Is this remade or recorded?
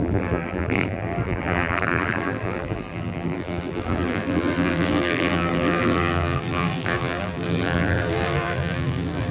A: remade